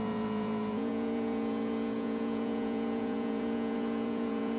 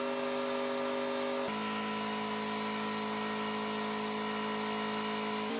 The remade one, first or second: first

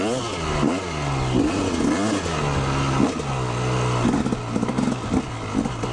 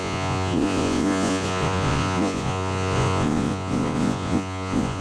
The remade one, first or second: second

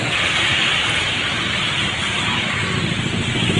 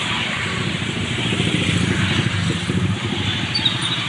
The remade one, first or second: second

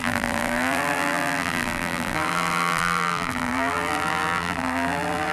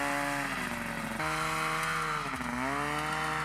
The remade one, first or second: first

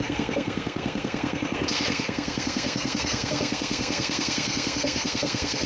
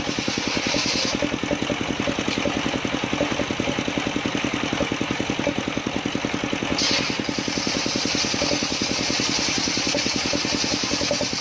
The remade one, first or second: first